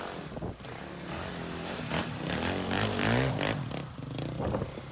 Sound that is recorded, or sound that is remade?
recorded